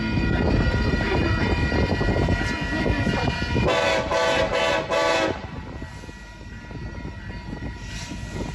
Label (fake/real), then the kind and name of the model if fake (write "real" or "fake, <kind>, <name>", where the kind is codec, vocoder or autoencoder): real